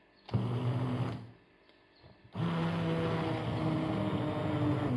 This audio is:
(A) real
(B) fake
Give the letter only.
A